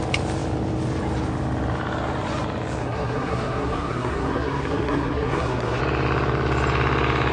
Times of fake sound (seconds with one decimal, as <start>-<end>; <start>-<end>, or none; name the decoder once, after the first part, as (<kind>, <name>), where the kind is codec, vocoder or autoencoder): 2.8-5.8 (codec, SNAC)